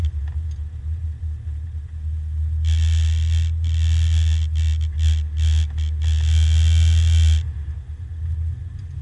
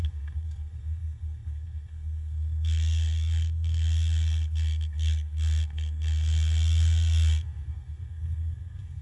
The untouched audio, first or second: first